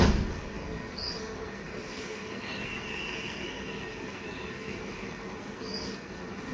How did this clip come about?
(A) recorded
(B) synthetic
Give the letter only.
B